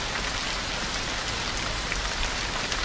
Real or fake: fake